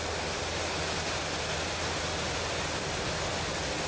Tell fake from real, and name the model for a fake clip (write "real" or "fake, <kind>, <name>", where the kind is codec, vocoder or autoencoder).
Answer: real